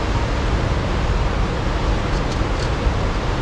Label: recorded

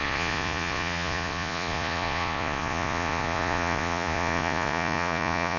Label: remade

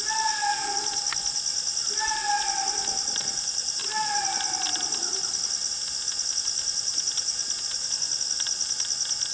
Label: recorded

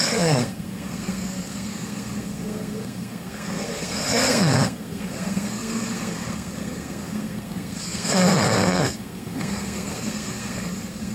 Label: remade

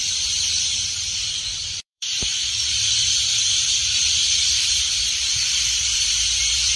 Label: remade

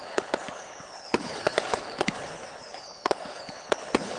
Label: remade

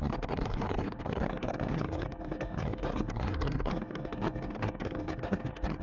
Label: remade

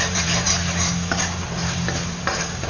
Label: remade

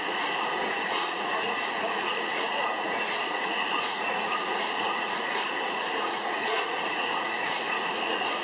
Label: remade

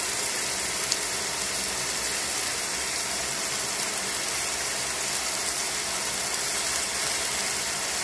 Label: recorded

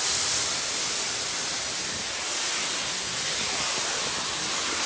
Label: recorded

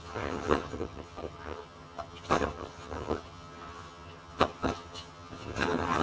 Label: remade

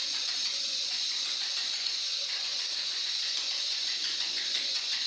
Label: remade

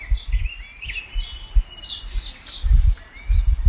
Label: recorded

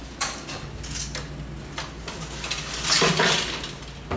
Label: recorded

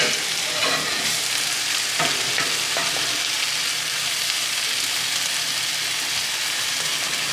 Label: recorded